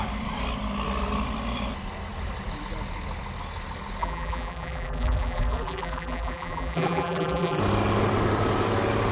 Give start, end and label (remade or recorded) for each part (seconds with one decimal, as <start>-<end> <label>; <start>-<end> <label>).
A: 0.0-4.0 recorded; 4.0-7.6 remade; 7.6-9.1 recorded